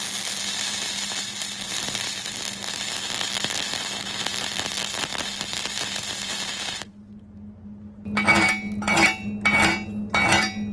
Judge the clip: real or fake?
real